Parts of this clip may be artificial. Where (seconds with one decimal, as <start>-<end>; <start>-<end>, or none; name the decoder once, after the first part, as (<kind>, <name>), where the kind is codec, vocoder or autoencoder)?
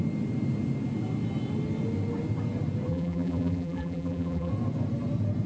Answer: 2.9-4.5 (vocoder, BigVGAN v2)